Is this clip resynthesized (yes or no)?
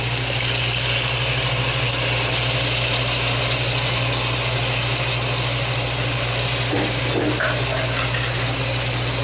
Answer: no